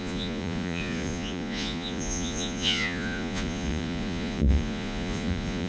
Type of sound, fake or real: fake